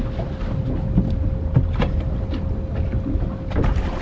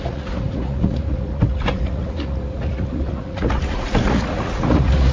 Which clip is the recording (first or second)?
first